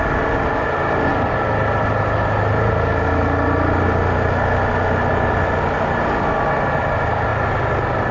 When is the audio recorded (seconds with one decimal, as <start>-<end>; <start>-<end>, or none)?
0.0-8.1